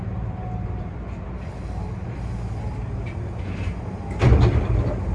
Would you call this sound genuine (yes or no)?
yes